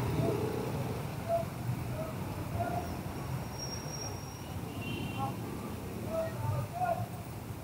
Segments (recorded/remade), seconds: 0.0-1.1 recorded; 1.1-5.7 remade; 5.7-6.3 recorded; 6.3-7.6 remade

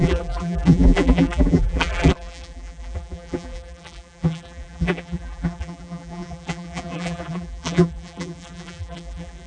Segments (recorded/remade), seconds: 0.0-9.5 remade

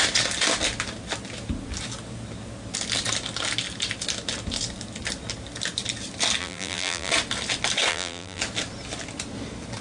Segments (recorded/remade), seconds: 0.0-6.4 recorded; 6.4-7.1 remade; 7.1-7.9 recorded; 7.9-8.4 remade; 8.4-9.8 recorded

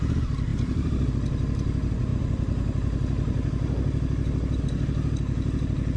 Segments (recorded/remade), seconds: 0.0-0.5 recorded; 0.5-1.1 remade; 1.1-6.0 recorded

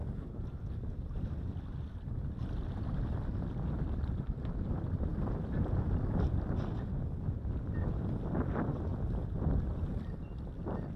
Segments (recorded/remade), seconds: 0.0-0.6 remade; 0.6-5.1 recorded; 5.1-7.4 remade; 7.4-11.0 recorded

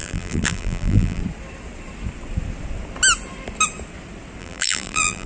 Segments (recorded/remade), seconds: 0.0-1.2 remade; 1.2-4.4 recorded; 4.4-5.3 remade